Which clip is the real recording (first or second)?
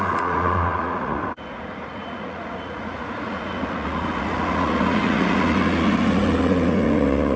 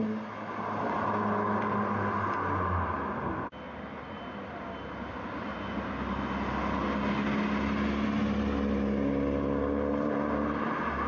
second